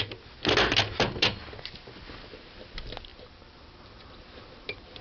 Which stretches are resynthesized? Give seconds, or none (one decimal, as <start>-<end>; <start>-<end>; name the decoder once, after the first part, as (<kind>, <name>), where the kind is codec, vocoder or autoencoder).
none